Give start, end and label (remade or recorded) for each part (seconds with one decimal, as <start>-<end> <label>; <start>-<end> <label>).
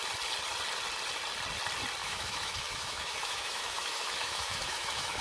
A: 0.0-2.0 recorded; 2.0-5.2 remade